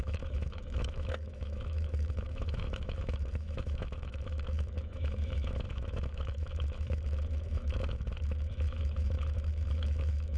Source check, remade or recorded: remade